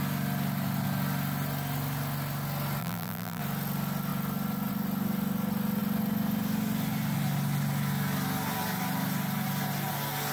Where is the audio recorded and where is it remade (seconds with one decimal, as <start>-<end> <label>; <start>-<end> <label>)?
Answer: 0.0-2.8 recorded; 2.8-3.4 remade; 3.4-10.3 recorded

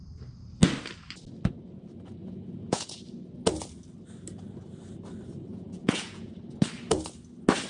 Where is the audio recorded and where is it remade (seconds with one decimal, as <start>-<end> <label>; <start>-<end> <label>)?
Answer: 0.0-2.2 recorded; 2.2-3.0 remade; 3.0-5.5 recorded; 5.5-6.3 remade; 6.3-7.7 recorded

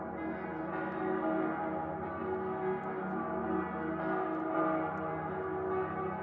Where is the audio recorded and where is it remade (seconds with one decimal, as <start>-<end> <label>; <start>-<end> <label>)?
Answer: 0.0-6.2 recorded

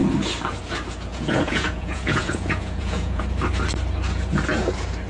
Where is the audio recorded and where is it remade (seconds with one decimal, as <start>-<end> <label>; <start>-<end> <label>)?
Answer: 0.0-1.1 recorded; 1.1-3.2 remade; 3.2-5.1 recorded